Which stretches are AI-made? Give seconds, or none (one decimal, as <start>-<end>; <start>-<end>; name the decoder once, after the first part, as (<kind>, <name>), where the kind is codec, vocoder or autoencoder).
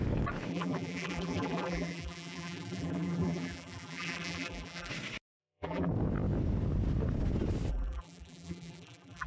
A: 0.5-4.9 (vocoder, BigVGAN v2); 5.4-5.9; 7.7-9.3